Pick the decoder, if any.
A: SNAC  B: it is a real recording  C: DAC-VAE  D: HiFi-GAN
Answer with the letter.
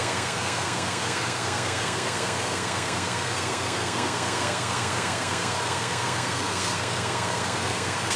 A